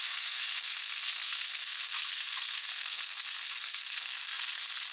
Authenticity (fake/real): fake